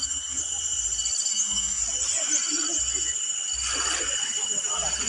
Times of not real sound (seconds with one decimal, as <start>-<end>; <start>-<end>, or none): 0.0-0.4; 1.3-1.8